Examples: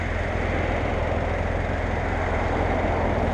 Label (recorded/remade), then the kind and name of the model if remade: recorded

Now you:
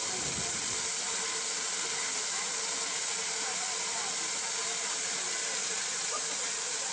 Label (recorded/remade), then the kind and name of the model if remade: recorded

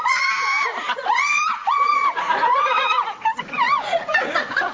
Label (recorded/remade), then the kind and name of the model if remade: remade, vocoder, Vocos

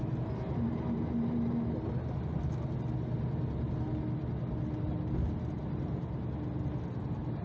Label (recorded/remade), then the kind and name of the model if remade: recorded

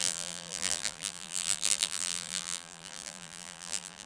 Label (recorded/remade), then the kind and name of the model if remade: remade, vocoder, BigVGAN v2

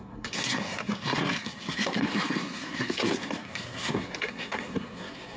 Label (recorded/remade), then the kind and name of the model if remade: remade, codec, SNAC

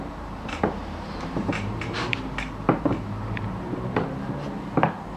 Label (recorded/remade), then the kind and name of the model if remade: remade, vocoder, BigVGAN v2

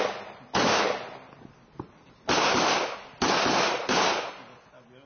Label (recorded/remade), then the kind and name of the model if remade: recorded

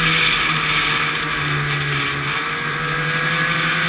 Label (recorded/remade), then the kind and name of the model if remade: recorded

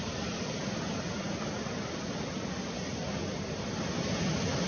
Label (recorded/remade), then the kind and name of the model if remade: recorded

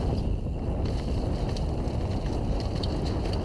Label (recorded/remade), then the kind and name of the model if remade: recorded